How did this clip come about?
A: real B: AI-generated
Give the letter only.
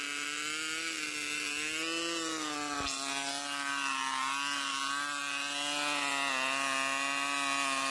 A